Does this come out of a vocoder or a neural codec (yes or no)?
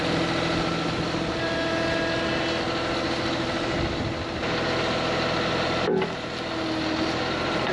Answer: no